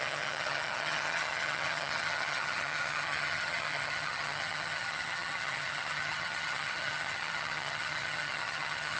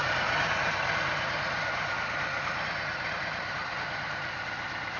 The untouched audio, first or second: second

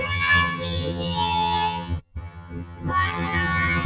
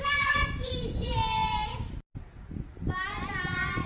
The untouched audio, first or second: second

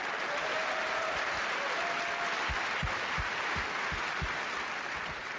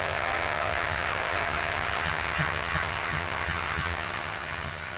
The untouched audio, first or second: first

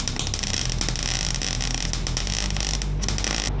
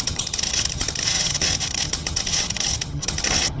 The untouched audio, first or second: first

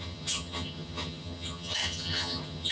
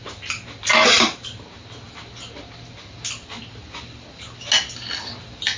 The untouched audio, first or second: second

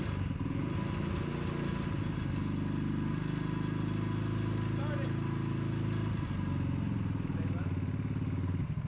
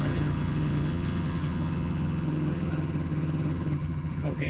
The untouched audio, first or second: first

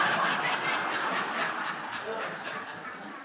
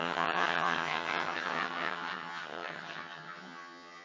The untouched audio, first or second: first